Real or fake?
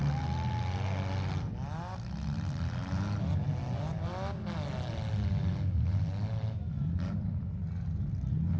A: real